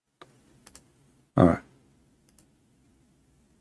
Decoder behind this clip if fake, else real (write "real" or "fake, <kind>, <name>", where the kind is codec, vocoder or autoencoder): real